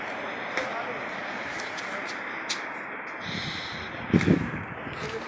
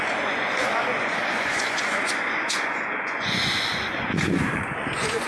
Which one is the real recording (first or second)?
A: first